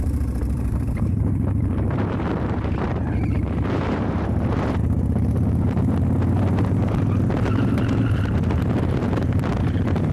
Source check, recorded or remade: remade